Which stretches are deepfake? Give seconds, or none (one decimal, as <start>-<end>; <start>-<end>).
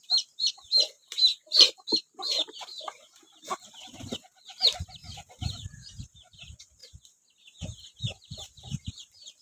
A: 0.0-5.0; 5.5-6.8; 8.0-9.4